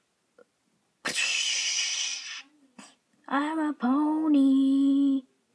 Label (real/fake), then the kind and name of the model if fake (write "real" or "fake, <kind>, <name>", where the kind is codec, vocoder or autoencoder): real